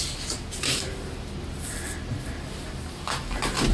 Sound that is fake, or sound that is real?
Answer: real